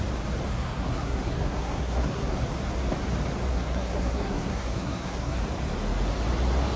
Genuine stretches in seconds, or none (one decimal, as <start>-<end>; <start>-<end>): 0.0-0.5; 2.3-3.5; 5.4-6.8